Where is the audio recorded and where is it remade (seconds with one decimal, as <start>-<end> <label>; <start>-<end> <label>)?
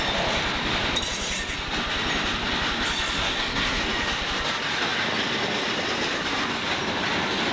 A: 0.0-3.2 recorded; 3.2-3.8 remade; 3.8-7.5 recorded